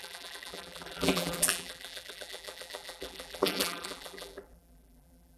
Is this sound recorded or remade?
remade